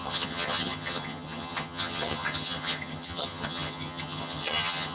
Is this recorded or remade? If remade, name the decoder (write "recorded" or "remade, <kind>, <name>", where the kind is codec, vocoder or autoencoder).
remade, vocoder, HiFi-GAN